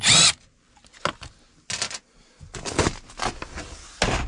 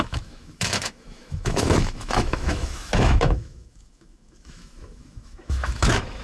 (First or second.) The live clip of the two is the first